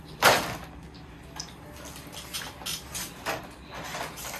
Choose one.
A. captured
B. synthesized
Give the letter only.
A